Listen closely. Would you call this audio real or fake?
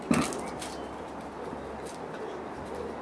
real